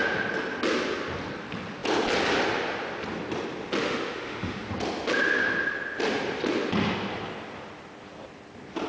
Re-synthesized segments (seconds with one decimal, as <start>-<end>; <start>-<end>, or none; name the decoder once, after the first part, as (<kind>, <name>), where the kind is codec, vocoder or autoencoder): 3.8-4.7 (autoencoder, DAC-VAE)